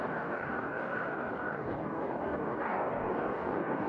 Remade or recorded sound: remade